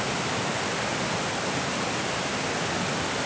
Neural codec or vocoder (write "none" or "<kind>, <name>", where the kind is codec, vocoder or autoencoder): none